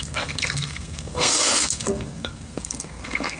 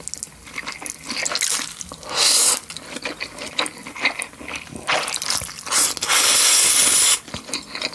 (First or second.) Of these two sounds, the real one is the second